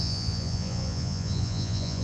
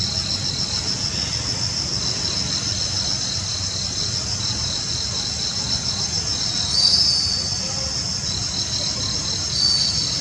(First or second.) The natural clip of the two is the second